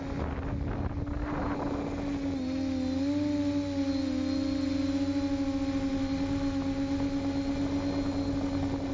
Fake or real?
real